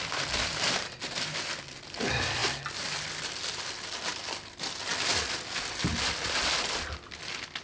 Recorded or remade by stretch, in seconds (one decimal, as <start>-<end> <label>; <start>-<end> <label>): 0.0-7.6 recorded